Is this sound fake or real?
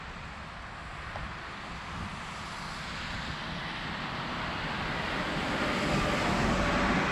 real